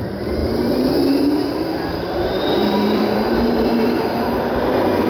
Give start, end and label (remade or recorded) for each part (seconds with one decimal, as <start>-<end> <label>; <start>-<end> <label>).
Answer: 0.0-2.6 recorded; 2.6-3.9 remade; 3.9-5.1 recorded